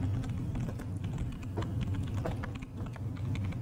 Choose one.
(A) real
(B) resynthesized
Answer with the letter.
A